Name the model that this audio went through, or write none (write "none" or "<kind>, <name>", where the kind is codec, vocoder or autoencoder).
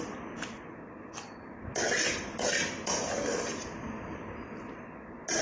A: none